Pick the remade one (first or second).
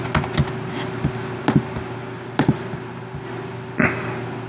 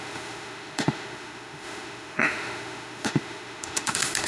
second